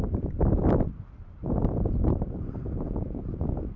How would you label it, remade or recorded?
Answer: remade